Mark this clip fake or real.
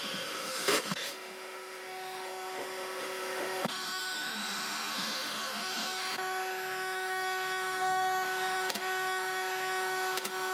fake